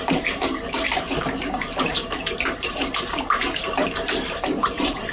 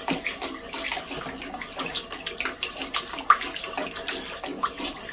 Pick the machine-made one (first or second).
first